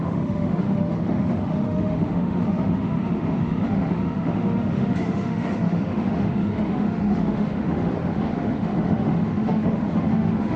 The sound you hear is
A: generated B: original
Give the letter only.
A